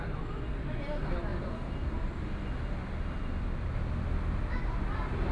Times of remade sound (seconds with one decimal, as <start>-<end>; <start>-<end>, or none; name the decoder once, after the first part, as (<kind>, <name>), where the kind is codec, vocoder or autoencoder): none